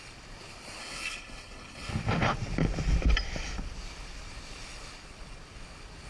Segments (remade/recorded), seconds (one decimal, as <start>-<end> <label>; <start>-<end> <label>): 0.0-0.8 recorded; 0.8-1.9 remade; 1.9-6.1 recorded